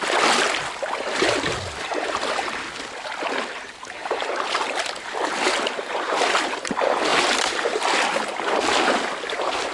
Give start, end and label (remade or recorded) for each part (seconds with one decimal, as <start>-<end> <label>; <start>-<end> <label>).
0.0-9.7 recorded